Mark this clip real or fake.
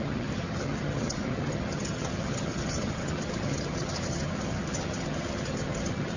fake